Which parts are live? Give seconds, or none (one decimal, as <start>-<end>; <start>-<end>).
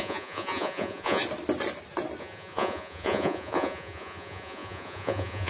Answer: 1.2-2.2